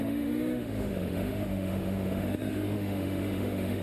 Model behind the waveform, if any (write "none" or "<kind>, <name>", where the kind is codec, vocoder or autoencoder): autoencoder, DAC-VAE